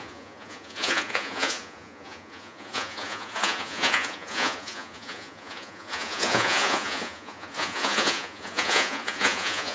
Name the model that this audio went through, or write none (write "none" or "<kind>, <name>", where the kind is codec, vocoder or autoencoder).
vocoder, Vocos